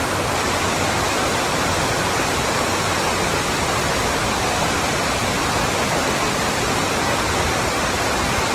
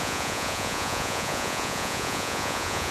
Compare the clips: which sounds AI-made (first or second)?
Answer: second